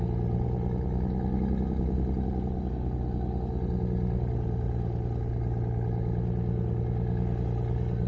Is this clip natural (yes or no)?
yes